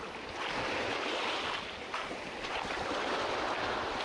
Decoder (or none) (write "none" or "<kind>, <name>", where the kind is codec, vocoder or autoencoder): none